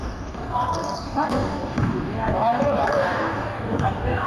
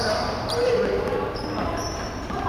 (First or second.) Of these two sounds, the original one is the second